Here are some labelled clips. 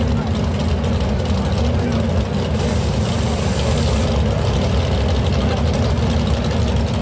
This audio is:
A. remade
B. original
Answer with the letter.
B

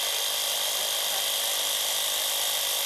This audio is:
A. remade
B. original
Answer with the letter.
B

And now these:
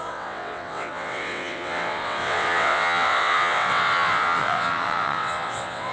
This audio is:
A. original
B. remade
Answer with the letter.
B